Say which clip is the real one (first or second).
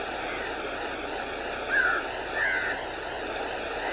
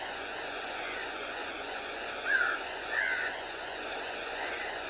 first